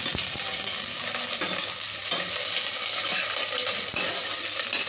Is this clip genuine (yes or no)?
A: yes